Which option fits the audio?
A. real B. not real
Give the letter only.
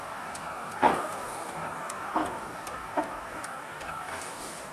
B